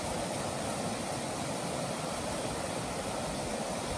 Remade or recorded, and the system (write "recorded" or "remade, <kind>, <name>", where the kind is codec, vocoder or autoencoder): recorded